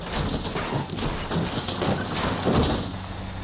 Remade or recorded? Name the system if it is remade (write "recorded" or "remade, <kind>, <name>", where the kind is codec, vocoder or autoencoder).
recorded